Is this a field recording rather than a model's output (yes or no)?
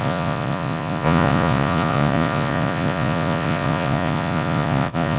no